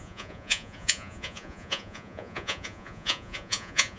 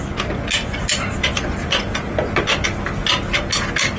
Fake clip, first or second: first